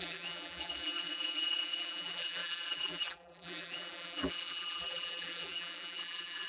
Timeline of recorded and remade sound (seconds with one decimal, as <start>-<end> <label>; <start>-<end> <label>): 0.0-6.5 remade